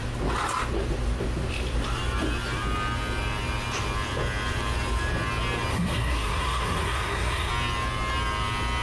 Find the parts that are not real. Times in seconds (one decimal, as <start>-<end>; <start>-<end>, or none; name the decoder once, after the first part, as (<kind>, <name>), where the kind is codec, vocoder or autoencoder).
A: 5.7-7.5 (codec, SNAC)